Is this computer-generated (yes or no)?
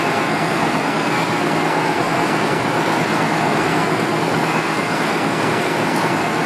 yes